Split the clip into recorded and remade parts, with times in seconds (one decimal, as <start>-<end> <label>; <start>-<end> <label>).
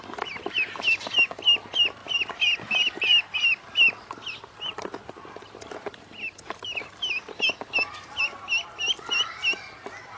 0.0-2.0 recorded; 2.0-6.8 remade; 6.8-10.2 recorded